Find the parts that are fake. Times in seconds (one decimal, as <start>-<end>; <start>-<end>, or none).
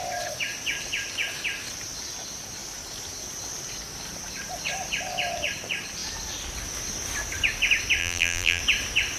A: 8.0-8.6